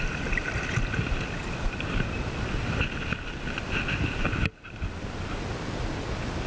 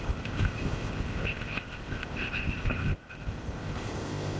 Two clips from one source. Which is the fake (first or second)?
second